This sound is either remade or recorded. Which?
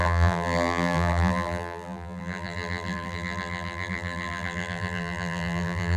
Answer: remade